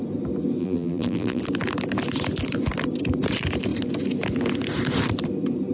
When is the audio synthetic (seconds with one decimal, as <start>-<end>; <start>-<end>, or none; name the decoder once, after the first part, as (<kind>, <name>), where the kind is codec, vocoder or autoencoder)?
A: 0.6-1.4 (vocoder, BigVGAN v2)